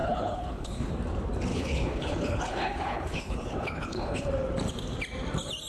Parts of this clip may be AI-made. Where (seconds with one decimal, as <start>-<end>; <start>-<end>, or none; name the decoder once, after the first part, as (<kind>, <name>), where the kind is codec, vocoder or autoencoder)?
0.0-0.9 (codec, HILCodec); 1.5-4.3

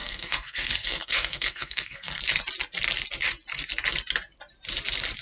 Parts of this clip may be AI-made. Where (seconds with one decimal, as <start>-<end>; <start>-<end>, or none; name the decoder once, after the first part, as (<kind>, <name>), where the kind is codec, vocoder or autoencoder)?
0.0-2.2 (codec, SNAC)

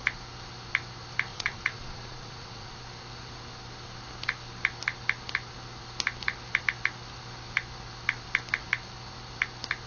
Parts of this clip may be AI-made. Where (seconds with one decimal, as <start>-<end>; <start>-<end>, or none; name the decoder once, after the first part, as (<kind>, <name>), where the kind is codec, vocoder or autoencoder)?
1.3-2.7 (vocoder, Vocos)

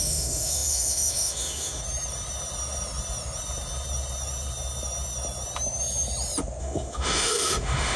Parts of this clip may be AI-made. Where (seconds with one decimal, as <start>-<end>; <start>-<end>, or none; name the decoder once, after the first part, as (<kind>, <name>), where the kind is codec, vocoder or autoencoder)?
0.0-1.8 (autoencoder, DAC-VAE); 6.6-8.0

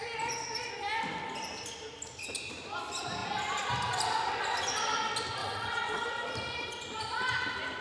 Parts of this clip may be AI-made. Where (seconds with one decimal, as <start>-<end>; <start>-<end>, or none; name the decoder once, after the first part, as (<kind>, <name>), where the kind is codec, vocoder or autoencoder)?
5.4-6.0 (vocoder, WaveNeXt)

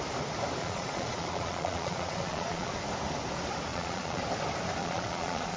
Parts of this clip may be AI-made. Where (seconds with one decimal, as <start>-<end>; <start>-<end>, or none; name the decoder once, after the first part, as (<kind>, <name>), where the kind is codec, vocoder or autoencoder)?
0.6-2.7 (vocoder, Vocos); 3.7-4.2; 4.8-5.6

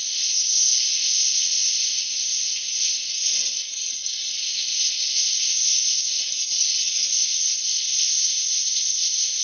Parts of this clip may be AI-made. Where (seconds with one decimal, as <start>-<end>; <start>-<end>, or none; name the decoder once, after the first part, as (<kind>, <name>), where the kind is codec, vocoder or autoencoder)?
0.0-3.1 (codec, ZipCodec); 4.4-6.2; 7.1-9.4

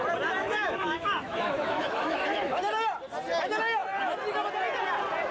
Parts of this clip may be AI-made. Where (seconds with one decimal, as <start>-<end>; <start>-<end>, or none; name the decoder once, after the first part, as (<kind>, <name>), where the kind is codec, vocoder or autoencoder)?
0.4-2.6 (autoencoder, DAC-VAE)